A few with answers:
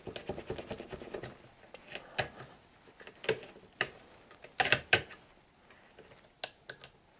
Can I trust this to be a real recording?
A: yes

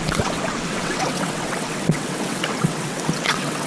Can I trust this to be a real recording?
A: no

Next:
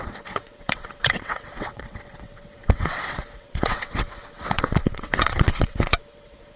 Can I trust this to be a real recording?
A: no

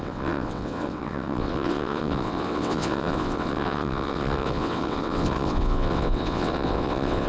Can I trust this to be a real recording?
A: no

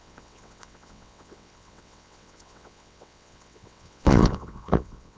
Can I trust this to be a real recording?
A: no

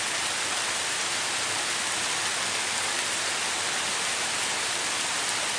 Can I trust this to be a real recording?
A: yes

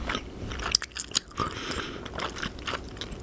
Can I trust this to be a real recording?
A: yes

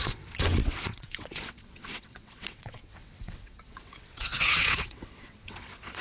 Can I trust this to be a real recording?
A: no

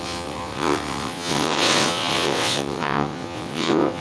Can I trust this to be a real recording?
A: no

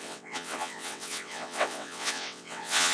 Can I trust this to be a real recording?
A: no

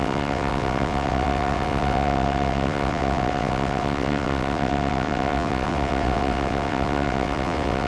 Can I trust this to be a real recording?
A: no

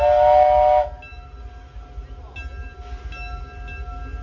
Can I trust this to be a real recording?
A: yes